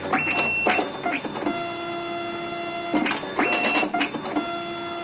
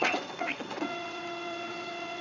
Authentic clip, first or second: first